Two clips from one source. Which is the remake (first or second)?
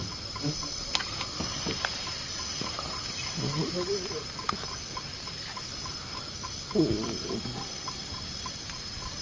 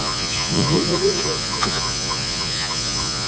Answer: second